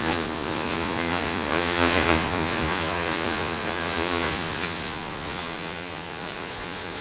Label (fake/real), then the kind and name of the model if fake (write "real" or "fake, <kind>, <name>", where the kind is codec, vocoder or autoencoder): fake, vocoder, Vocos